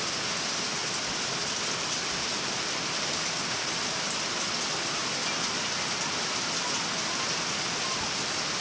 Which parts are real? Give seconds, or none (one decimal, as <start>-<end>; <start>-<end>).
0.0-0.8; 3.1-8.6

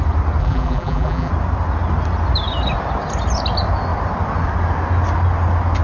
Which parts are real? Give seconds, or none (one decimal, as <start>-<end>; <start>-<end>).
0.0-0.4; 1.3-5.8

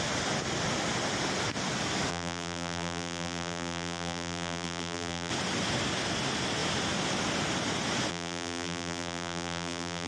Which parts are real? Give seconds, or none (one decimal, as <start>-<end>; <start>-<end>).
0.0-2.1; 5.3-8.1

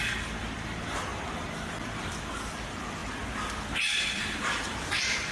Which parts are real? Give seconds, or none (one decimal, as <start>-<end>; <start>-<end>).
none

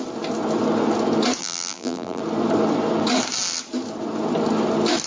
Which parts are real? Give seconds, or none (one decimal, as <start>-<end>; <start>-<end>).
0.0-1.4; 2.2-5.1

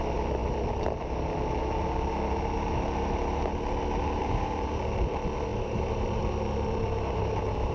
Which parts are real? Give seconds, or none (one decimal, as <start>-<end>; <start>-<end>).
0.0-4.2; 4.8-5.5; 6.2-7.7

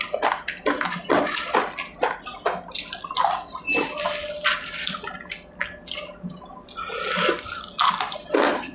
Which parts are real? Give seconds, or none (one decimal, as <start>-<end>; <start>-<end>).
0.0-8.7